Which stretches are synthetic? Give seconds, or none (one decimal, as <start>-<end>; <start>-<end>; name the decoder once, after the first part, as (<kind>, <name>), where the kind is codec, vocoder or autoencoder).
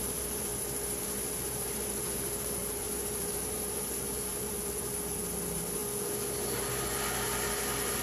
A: 0.0-0.5 (vocoder, BigVGAN v2); 1.0-5.8